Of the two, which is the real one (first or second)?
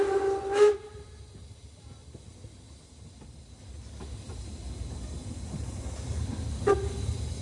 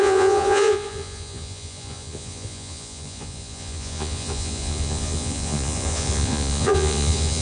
first